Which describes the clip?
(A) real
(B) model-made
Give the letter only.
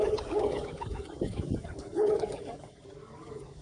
B